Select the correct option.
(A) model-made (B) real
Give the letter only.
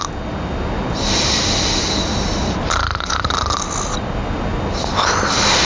B